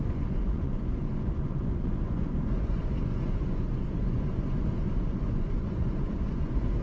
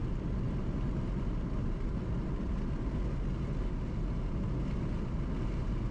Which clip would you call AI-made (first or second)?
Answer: first